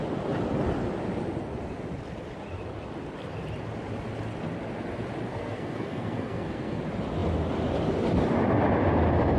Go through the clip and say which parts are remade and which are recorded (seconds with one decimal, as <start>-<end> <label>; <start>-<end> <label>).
0.0-5.3 recorded; 5.3-6.8 remade; 6.8-9.4 recorded